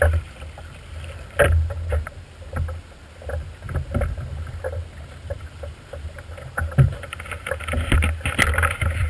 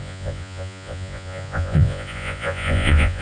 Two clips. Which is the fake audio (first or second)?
second